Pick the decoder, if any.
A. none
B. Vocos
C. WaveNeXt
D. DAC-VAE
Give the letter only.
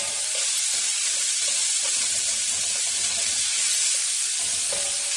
A